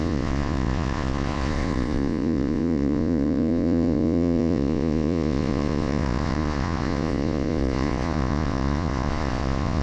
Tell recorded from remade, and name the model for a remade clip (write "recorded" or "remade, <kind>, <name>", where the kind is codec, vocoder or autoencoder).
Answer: remade, vocoder, Vocos